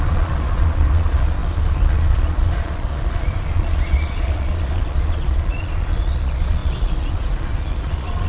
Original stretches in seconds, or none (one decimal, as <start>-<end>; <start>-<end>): none